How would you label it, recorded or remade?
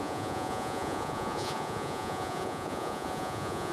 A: remade